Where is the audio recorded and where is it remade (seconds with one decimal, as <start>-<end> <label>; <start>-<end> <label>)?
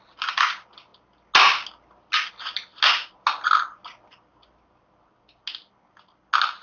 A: 0.0-6.6 recorded